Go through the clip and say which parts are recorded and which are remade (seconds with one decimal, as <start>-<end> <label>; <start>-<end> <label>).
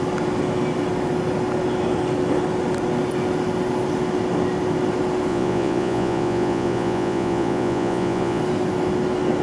0.0-5.3 recorded; 5.3-8.4 remade; 8.4-9.4 recorded